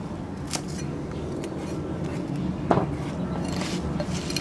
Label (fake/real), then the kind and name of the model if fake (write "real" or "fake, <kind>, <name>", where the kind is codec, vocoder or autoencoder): real